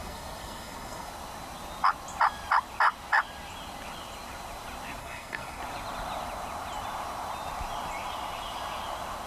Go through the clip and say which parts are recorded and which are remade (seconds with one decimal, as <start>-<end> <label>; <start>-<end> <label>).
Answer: 0.0-1.1 remade; 1.1-5.0 recorded; 5.0-5.6 remade; 5.6-9.3 recorded